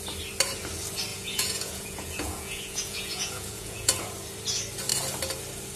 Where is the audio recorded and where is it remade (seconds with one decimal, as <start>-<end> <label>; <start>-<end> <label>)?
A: 0.0-1.1 recorded; 1.1-4.0 remade; 4.0-5.8 recorded

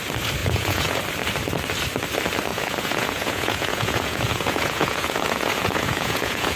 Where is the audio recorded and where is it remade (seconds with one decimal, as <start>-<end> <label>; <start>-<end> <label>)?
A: 0.0-0.4 recorded; 0.4-1.0 remade; 1.0-2.5 recorded; 2.5-6.6 remade

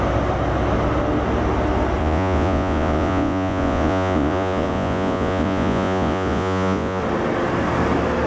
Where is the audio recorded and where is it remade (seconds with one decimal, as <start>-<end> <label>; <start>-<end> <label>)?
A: 0.0-2.0 recorded; 2.0-7.0 remade; 7.0-8.3 recorded

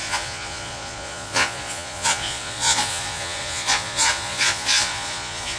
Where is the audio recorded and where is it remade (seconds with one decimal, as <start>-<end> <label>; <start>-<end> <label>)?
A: 0.0-5.6 remade

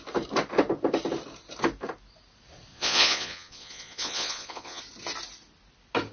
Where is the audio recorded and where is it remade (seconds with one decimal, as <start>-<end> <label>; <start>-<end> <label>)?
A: 0.0-2.7 recorded; 2.7-4.8 remade; 4.8-6.1 recorded

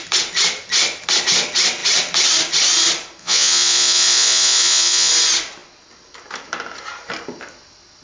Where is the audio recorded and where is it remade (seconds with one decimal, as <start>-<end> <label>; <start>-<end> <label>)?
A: 0.0-3.2 recorded; 3.2-5.1 remade; 5.1-8.0 recorded